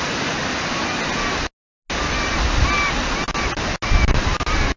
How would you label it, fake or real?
real